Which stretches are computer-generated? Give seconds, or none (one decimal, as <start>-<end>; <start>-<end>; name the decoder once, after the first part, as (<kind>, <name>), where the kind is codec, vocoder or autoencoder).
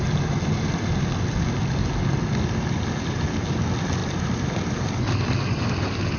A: none